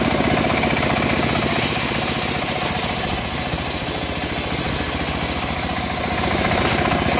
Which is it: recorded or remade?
recorded